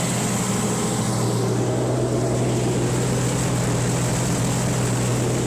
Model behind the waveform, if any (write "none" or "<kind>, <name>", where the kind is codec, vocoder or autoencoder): none